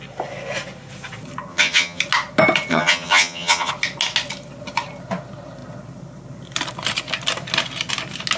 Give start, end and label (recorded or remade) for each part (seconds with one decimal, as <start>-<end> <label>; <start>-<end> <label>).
0.0-1.5 recorded; 1.5-2.0 remade; 2.0-2.7 recorded; 2.7-3.7 remade; 3.7-8.4 recorded